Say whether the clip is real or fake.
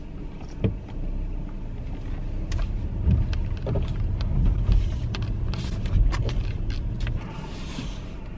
real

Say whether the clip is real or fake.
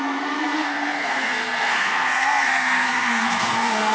fake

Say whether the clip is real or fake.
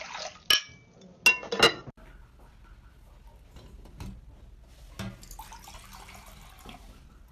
real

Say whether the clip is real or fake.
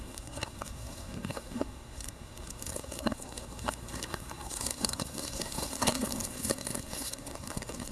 fake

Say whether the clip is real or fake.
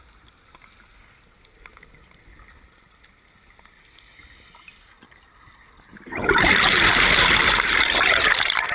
real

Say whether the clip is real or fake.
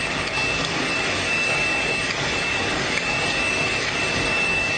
fake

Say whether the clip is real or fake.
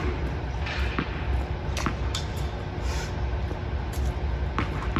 real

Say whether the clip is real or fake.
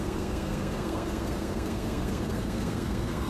fake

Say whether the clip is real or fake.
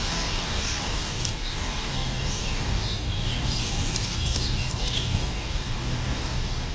fake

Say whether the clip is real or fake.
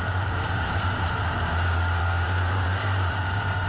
fake